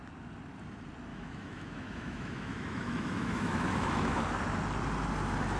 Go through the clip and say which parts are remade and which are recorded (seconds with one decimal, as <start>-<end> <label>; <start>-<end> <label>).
0.0-1.1 recorded; 1.1-4.2 remade; 4.2-5.6 recorded